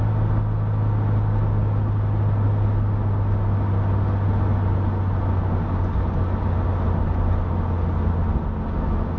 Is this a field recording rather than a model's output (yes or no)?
yes